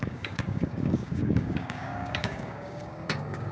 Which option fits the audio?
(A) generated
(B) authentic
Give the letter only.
A